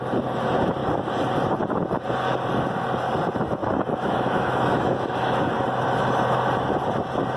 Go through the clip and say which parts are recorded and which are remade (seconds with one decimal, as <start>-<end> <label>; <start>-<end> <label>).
0.0-3.6 recorded; 3.6-5.4 remade; 5.4-7.4 recorded